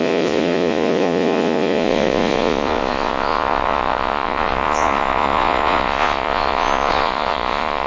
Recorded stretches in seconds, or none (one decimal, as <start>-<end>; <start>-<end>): none